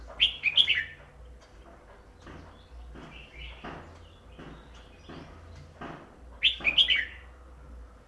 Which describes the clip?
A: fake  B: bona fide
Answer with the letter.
B